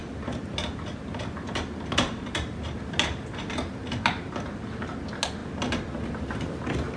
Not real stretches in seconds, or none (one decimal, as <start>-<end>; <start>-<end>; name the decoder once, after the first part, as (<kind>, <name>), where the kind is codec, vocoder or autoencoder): none